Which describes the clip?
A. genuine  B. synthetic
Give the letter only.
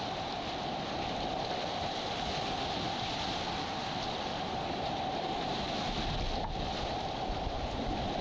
A